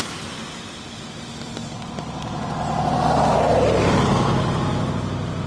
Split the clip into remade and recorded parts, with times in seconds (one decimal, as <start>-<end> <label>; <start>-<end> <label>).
0.0-1.6 recorded; 1.6-4.9 remade; 4.9-5.5 recorded